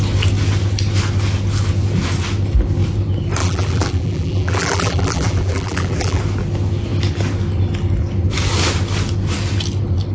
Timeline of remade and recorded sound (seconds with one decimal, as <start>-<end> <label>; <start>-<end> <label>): 0.0-3.4 recorded; 3.4-6.2 remade; 6.2-10.1 recorded